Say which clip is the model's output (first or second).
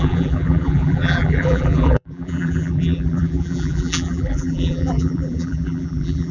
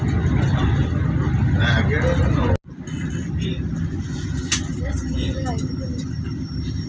first